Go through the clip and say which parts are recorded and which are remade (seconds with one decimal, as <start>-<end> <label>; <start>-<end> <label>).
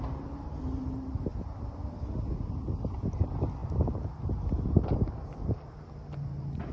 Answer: 0.0-6.7 recorded